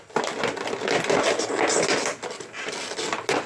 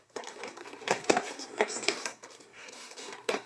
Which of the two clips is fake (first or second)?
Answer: second